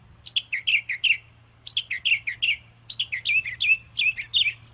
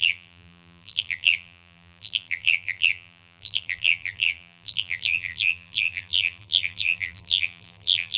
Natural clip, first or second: first